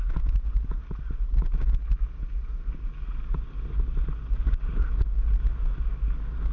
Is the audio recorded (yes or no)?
yes